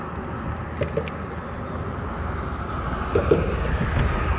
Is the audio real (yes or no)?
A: yes